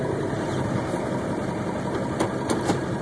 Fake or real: real